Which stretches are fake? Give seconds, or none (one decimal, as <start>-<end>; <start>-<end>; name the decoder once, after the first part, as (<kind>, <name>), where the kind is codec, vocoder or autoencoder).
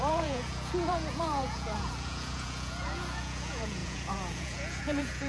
0.0-5.3 (vocoder, Vocos)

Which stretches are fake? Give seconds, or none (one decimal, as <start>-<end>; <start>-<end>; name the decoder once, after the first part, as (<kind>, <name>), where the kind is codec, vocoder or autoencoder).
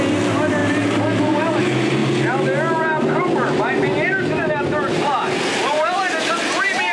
none